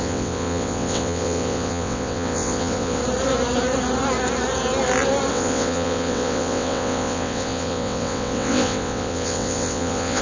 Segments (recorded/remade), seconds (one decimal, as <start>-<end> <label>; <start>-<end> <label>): 0.0-3.0 remade; 3.0-5.3 recorded; 5.3-10.2 remade